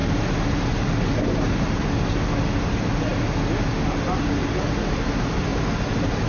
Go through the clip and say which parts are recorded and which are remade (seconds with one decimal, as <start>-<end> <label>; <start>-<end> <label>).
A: 0.0-6.3 recorded